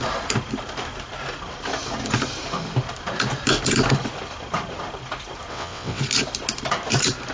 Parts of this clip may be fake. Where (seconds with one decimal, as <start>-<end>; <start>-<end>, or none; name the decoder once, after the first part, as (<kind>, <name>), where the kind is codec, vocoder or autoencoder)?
5.5-6.0 (vocoder, WaveNeXt)